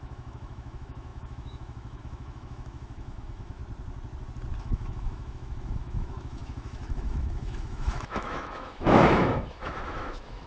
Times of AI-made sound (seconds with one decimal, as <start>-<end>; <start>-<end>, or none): 0.0-3.6; 4.6-10.5